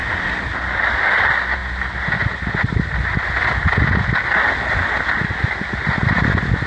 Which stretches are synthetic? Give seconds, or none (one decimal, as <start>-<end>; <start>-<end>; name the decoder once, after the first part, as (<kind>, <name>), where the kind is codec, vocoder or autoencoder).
none